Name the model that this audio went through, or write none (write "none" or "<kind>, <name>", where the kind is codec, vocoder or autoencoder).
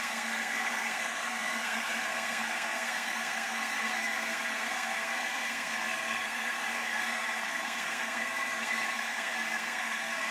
codec, SNAC